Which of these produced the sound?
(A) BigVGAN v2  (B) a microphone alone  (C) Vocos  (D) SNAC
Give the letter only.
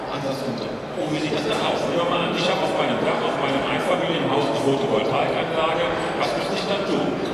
B